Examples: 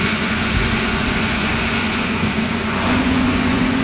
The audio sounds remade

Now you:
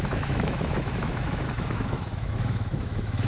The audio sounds remade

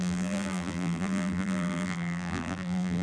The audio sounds remade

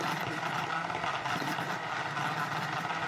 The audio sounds recorded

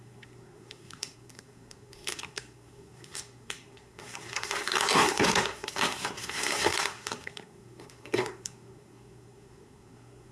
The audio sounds remade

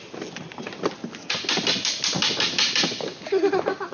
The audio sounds recorded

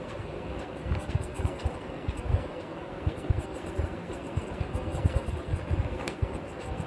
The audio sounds remade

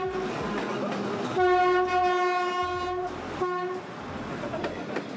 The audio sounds recorded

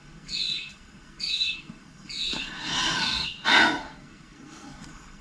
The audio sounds remade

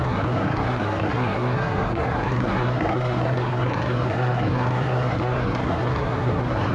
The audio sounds remade